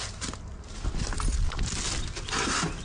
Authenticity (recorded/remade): recorded